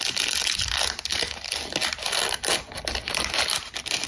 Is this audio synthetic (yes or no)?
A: no